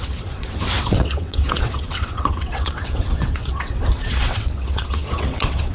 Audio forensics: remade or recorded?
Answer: remade